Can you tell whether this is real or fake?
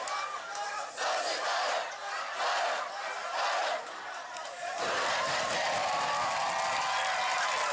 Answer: real